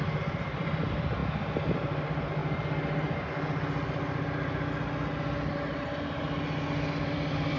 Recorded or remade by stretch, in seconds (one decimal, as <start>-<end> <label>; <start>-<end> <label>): 0.0-1.2 remade; 1.2-1.8 recorded; 1.8-2.4 remade; 2.4-7.0 recorded; 7.0-7.6 remade